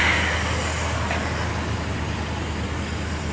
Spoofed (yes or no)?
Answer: no